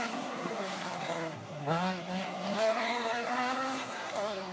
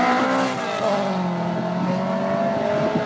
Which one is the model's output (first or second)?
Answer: first